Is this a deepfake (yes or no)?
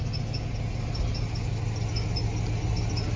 no